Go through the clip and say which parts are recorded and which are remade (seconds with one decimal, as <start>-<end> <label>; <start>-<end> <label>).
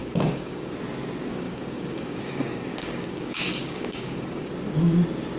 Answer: 0.0-0.7 remade; 0.7-1.3 recorded; 1.3-4.5 remade; 4.5-5.4 recorded